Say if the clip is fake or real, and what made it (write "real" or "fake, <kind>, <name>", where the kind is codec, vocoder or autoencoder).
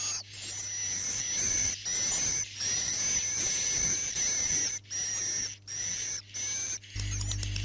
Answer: real